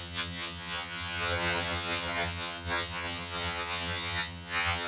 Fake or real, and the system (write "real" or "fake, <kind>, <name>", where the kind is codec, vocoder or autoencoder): fake, vocoder, HiFi-GAN